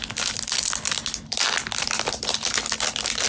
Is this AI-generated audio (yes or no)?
no